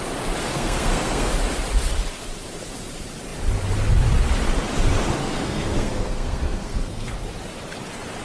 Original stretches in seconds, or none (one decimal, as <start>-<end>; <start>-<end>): 0.0-0.4; 1.3-5.2; 7.2-8.2